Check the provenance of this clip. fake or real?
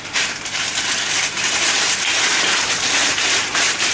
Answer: fake